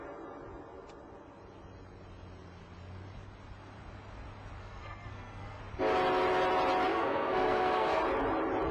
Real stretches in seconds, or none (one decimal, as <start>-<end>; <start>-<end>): 0.0-4.6; 5.6-6.9; 8.0-8.7